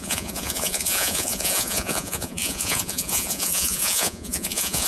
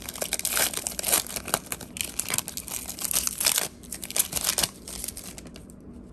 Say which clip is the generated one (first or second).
first